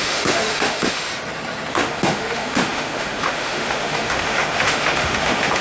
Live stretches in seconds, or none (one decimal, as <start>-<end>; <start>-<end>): 1.1-1.7